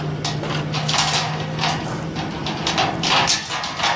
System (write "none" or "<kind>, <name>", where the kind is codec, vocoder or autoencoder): none